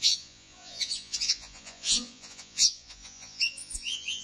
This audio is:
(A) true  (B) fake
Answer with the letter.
B